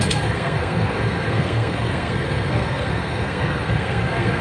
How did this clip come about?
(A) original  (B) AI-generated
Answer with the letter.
B